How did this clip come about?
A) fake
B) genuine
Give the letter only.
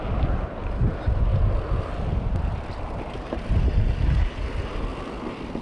B